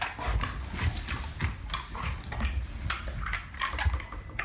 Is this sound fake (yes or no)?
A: no